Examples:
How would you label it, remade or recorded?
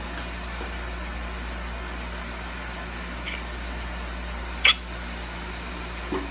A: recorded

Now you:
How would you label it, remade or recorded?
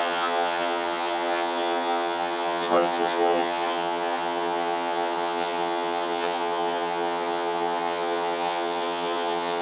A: remade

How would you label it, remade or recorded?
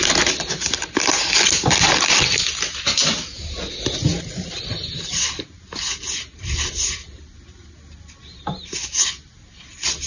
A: recorded